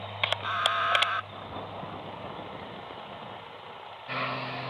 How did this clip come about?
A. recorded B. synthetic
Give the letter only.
A